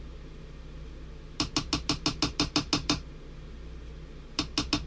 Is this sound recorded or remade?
recorded